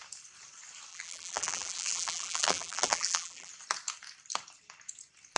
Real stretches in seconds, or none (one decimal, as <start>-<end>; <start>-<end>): 0.0-0.9; 3.5-5.4